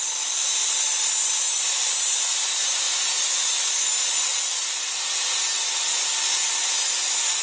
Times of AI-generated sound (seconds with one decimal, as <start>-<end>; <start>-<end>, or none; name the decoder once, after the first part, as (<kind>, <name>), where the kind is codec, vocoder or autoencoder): none